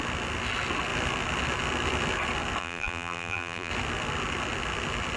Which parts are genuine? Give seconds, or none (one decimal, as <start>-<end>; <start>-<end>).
0.0-2.6; 3.7-5.2